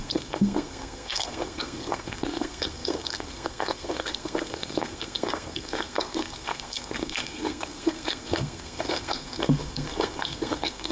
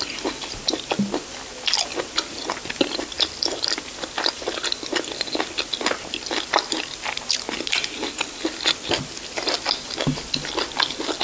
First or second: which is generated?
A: first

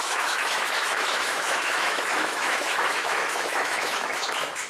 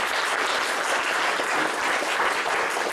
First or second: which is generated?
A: first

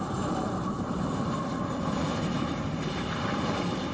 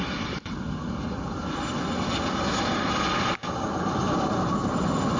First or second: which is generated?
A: first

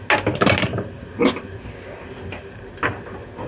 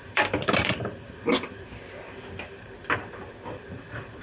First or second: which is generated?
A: second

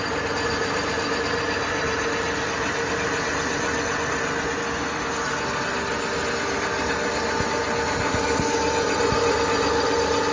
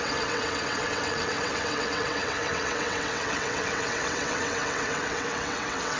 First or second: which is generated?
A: second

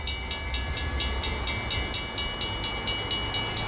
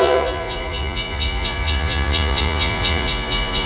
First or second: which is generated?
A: second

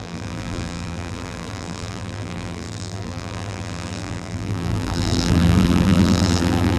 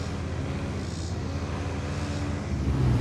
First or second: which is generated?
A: first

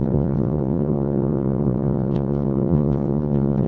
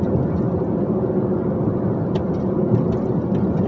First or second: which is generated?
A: first